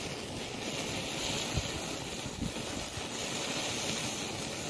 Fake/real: real